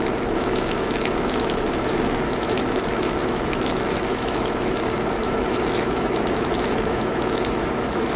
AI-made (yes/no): yes